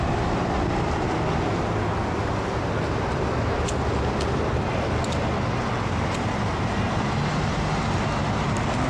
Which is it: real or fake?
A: real